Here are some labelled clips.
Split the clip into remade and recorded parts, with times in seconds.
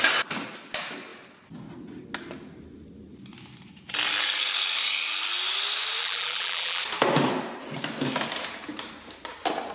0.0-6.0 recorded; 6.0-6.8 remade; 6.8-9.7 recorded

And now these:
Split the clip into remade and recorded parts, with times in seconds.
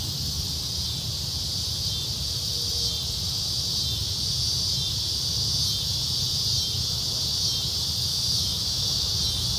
0.0-8.1 recorded; 8.1-9.1 remade; 9.1-9.6 recorded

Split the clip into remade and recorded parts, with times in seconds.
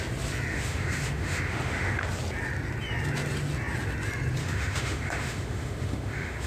0.0-0.5 recorded; 0.5-2.0 remade; 2.0-4.4 recorded; 4.4-6.5 remade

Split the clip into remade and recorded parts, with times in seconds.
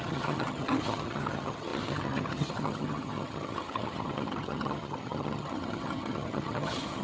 0.0-7.0 remade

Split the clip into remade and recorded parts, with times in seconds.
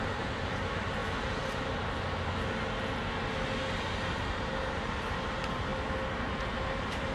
0.0-1.0 remade; 1.0-4.2 recorded; 4.2-5.7 remade; 5.7-6.6 recorded; 6.6-7.1 remade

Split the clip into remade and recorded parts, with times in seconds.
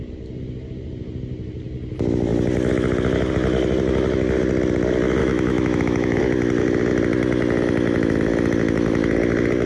0.0-5.2 recorded; 5.2-6.2 remade; 6.2-9.7 recorded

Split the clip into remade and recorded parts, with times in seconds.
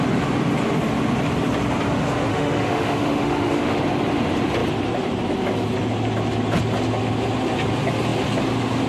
0.0-2.3 recorded; 2.3-3.8 remade; 3.8-8.9 recorded